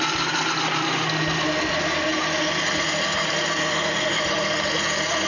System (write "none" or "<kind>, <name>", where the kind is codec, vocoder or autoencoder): none